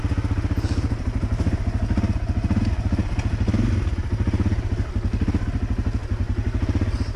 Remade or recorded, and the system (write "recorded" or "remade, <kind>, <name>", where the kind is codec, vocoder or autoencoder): recorded